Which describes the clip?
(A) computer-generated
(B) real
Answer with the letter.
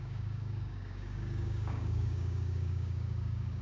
A